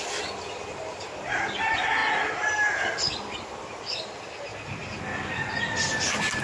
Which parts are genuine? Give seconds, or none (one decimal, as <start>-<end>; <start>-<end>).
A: 0.0-6.4